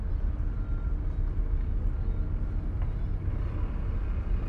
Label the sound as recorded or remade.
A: recorded